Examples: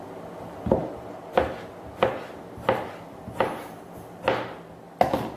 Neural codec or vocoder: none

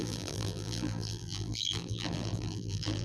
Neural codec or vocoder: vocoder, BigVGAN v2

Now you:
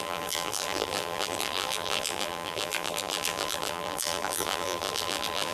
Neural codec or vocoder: vocoder, BigVGAN v2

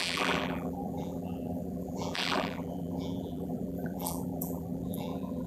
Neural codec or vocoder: vocoder, BigVGAN v2